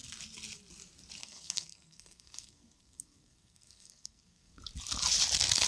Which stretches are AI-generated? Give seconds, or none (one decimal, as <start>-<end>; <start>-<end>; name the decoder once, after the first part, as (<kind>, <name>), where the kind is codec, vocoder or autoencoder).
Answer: 1.2-4.6 (codec, SNAC)